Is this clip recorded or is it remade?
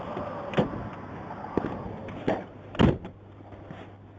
recorded